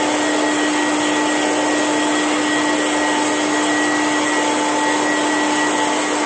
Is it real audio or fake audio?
real